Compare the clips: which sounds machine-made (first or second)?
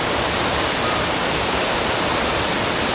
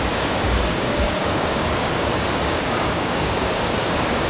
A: second